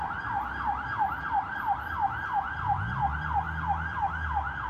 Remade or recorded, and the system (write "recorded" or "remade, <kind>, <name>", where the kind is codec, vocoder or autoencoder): recorded